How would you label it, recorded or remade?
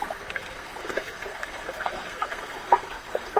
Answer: remade